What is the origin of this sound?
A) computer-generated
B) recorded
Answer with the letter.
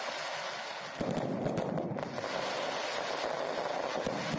B